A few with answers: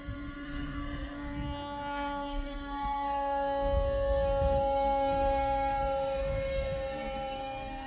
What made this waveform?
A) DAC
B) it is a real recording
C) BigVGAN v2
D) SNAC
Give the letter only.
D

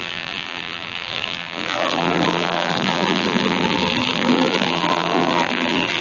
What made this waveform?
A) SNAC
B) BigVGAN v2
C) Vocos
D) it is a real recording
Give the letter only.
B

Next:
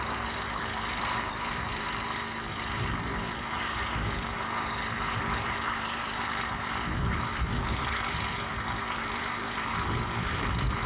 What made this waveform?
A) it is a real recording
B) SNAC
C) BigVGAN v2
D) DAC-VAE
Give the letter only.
C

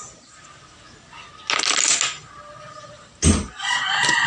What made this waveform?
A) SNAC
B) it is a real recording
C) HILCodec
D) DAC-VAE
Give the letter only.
B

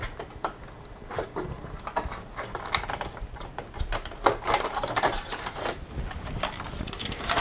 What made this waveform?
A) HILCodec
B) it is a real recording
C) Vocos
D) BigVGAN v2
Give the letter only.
B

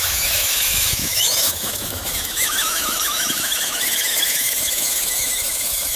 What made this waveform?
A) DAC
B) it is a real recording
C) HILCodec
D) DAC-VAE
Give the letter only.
D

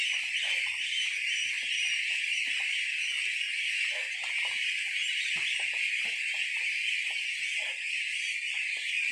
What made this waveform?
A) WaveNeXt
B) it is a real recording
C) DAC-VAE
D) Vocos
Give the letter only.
B